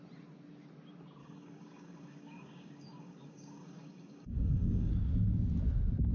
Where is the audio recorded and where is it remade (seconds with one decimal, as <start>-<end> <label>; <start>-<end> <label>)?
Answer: 0.0-1.2 recorded; 1.2-4.9 remade; 4.9-6.1 recorded